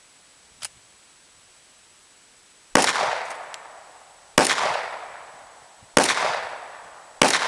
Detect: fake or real real